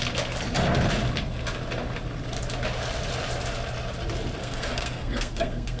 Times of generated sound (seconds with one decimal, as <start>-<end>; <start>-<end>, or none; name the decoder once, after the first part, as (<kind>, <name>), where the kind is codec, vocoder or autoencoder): 4.4-5.8 (codec, SNAC)